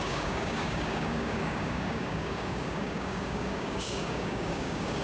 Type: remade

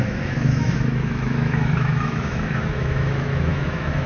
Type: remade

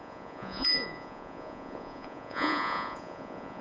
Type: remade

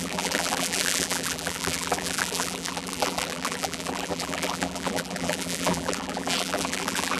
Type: remade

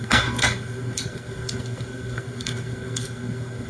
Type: remade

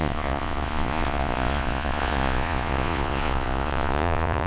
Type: remade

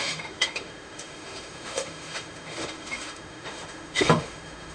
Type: remade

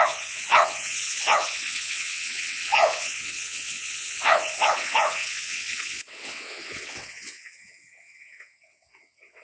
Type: remade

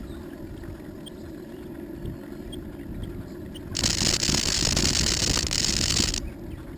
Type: recorded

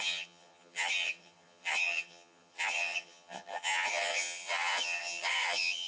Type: remade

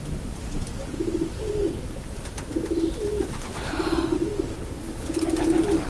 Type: recorded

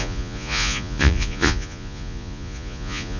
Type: remade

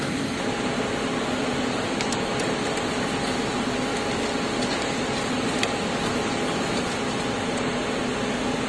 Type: recorded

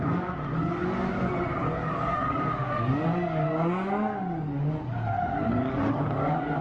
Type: remade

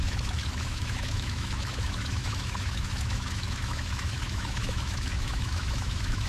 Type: remade